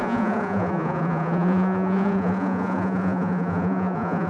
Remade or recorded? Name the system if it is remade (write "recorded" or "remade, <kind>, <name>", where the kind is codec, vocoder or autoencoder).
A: remade, vocoder, Vocos